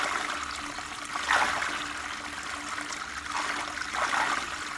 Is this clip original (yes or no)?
yes